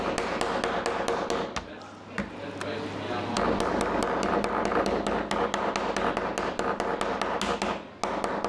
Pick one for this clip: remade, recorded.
recorded